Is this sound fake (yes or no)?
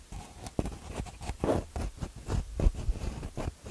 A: no